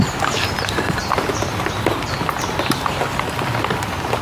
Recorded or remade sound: recorded